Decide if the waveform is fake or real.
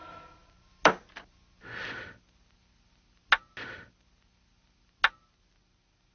real